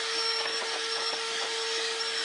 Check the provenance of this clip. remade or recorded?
remade